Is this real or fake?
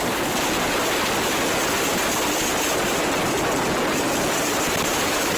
real